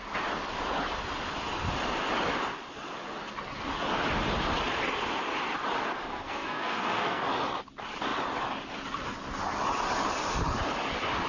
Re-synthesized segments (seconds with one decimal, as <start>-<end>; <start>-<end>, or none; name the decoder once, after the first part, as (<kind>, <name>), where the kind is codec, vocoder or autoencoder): 6.1-7.2 (codec, SNAC)